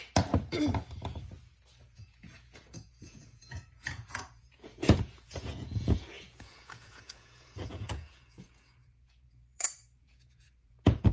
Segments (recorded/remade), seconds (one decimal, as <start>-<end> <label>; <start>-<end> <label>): 0.0-1.7 recorded; 1.7-11.1 remade